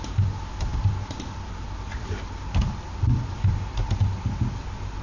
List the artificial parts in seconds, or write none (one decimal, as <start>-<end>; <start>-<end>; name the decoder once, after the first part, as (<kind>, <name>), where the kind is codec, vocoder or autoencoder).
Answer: none